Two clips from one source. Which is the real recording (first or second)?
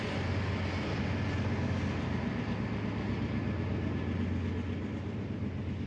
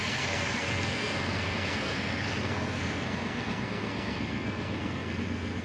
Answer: first